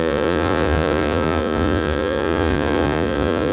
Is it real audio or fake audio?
fake